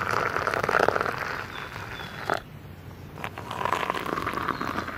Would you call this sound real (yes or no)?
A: yes